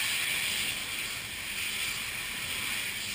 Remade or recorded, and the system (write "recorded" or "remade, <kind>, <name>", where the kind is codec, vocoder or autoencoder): recorded